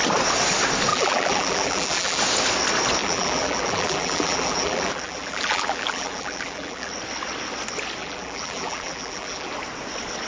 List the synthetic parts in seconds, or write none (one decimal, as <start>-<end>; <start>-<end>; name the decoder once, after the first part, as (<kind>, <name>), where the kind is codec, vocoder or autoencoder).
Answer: 0.9-2.2 (vocoder, BigVGAN v2); 3.0-6.9; 8.0-9.5